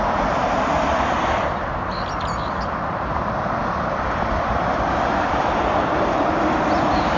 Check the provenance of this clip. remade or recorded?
remade